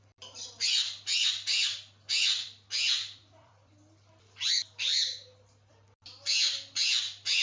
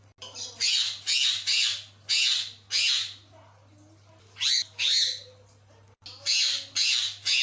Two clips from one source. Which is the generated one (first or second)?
first